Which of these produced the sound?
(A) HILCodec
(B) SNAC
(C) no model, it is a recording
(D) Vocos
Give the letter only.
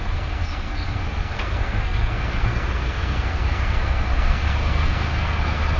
B